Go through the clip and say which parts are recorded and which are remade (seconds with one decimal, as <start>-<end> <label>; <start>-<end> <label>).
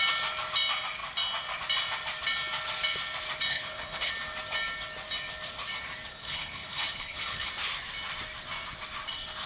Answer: 0.0-3.5 recorded; 3.5-4.1 remade; 4.1-6.1 recorded; 6.1-7.5 remade; 7.5-9.5 recorded